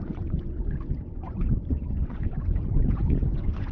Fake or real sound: fake